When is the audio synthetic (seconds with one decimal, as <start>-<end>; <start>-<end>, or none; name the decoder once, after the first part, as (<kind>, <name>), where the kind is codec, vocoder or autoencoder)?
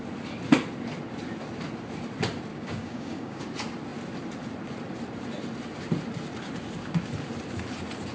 2.5-3.4 (codec, DAC)